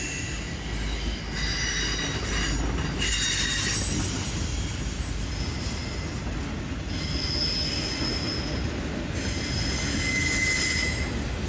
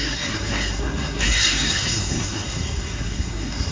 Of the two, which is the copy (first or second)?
second